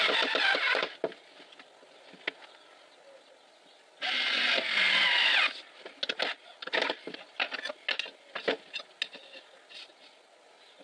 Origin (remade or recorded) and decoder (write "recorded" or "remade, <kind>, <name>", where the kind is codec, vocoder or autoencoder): recorded